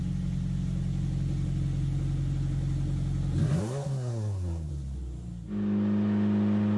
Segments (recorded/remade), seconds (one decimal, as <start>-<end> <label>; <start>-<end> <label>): 0.0-3.4 recorded; 3.4-4.7 remade; 4.7-6.8 recorded